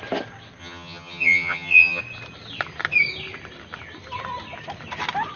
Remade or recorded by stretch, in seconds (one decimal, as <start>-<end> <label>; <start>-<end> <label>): 0.0-0.6 recorded; 0.6-2.0 remade; 2.0-5.4 recorded

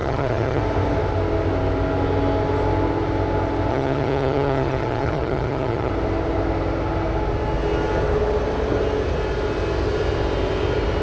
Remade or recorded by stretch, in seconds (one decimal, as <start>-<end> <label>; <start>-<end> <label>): 0.0-0.6 remade; 0.6-3.7 recorded; 3.7-5.9 remade; 5.9-11.0 recorded

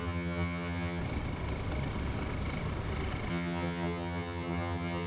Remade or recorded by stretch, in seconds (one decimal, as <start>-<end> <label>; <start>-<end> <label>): 0.0-1.0 remade; 1.0-3.3 recorded; 3.3-5.1 remade

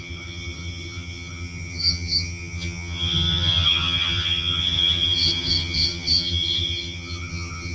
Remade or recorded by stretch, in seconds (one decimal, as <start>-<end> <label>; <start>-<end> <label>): 0.0-7.7 remade